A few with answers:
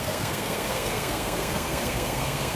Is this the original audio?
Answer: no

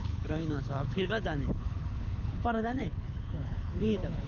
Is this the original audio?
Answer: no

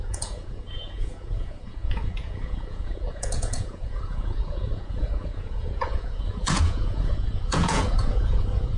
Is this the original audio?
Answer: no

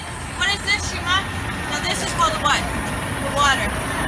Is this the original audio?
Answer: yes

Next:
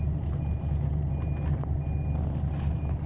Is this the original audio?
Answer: yes